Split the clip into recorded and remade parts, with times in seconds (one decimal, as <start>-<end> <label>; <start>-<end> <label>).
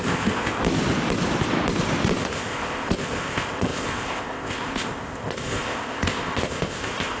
0.0-0.6 remade; 0.6-2.2 recorded; 2.2-7.2 remade